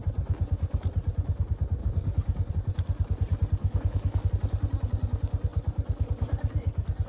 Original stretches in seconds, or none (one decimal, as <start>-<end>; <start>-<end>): 0.0-1.8; 2.5-3.6; 4.3-7.1